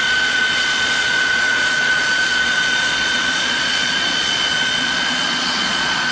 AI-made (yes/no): yes